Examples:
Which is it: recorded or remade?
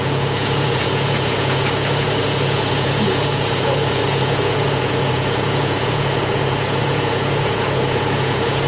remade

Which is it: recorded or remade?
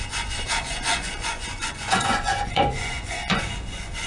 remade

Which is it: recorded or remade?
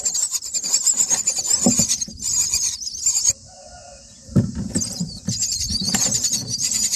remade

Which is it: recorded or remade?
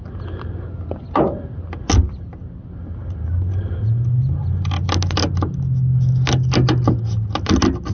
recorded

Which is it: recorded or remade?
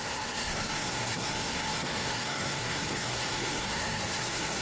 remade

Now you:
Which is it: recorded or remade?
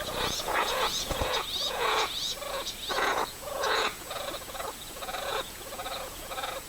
remade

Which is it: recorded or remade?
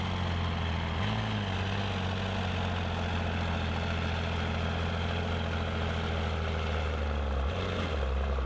recorded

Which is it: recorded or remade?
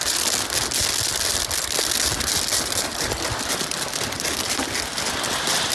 recorded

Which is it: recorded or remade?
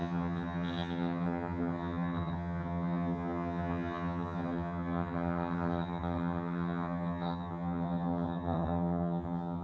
remade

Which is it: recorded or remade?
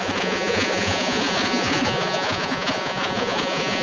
remade